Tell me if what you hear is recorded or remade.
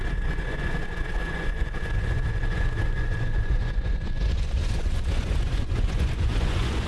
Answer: remade